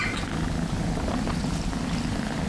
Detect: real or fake real